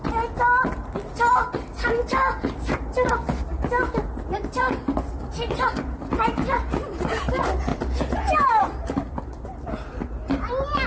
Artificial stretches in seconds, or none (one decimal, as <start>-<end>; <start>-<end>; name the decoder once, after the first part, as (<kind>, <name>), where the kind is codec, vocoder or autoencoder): none